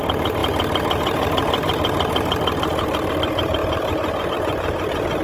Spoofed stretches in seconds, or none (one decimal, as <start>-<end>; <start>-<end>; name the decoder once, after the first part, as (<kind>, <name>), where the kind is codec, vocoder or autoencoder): 0.0-3.6 (vocoder, BigVGAN v2); 4.3-5.2